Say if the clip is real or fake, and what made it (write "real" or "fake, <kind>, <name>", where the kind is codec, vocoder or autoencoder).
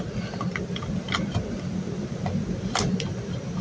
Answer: real